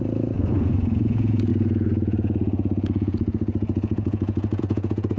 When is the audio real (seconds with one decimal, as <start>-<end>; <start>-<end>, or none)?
none